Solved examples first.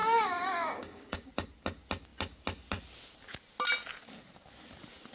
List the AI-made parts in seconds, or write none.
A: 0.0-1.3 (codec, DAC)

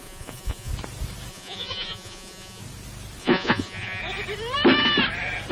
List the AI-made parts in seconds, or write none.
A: 0.0-0.7 (vocoder, Vocos); 1.3-2.6; 3.2-4.0

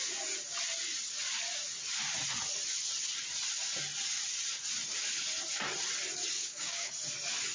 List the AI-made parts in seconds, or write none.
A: 6.4-6.9 (codec, DAC)

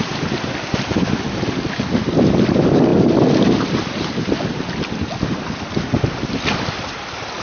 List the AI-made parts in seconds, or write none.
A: none

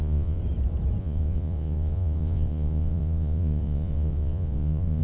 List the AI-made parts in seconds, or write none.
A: 0.0-0.4 (vocoder, Vocos); 1.0-5.0

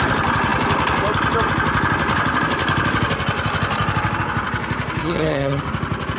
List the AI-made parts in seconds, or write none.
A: 5.0-5.6 (vocoder, HiFi-GAN)

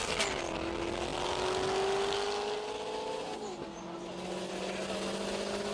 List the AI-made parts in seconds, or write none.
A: none